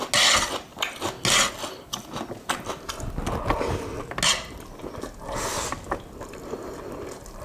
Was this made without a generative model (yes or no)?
yes